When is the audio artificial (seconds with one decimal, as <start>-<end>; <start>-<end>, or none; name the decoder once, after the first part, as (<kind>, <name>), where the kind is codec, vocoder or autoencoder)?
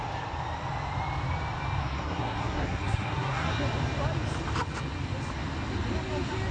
1.8-3.5 (codec, SNAC)